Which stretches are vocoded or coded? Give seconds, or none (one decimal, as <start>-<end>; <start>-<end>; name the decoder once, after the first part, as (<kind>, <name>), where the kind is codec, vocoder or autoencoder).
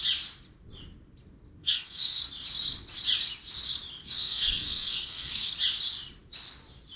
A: 1.6-2.2 (codec, SNAC); 4.0-5.5